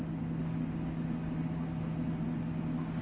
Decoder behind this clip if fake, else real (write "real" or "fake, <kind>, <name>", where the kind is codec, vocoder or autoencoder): real